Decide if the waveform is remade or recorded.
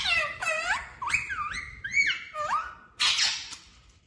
recorded